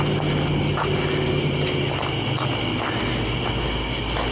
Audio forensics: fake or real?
real